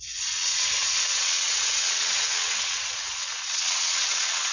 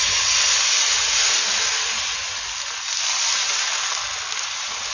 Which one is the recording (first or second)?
second